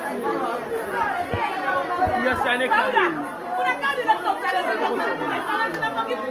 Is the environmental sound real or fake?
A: real